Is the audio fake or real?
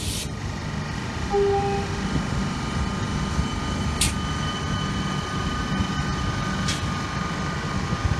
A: real